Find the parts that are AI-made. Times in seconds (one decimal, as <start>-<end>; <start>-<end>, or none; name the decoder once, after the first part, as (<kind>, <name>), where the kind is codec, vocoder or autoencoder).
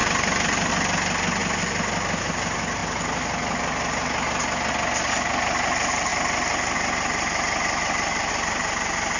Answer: 0.0-0.7 (vocoder, BigVGAN v2)